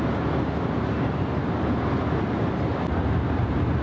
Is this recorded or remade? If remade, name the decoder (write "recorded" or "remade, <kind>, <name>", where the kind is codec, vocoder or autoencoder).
recorded